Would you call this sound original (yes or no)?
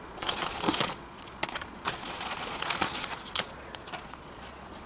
no